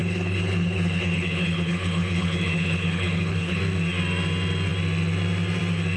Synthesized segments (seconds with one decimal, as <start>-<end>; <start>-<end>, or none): 0.0-3.6